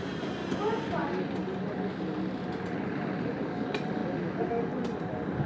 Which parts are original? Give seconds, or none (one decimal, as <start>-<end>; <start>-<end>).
1.0-2.4; 4.0-4.5